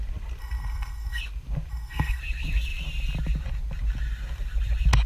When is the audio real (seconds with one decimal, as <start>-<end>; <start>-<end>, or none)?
0.0-0.4; 1.2-1.7; 2.2-5.1